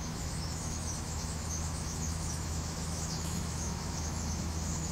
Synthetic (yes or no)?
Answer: yes